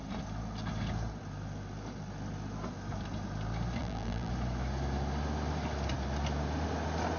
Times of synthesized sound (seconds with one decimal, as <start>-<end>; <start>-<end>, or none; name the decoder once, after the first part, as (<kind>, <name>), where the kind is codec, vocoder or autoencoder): 3.8-4.3 (vocoder, BigVGAN v2)